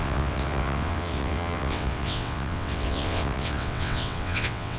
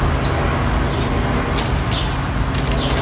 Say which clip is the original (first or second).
second